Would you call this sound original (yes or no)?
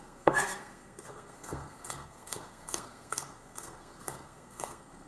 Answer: no